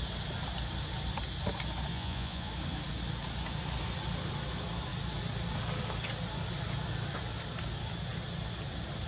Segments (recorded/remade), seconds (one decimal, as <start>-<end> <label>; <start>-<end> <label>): 0.0-1.9 recorded; 1.9-2.5 remade; 2.5-9.1 recorded